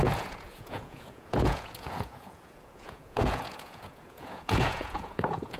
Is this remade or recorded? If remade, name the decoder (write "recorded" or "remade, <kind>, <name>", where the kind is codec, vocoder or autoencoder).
remade, vocoder, Vocos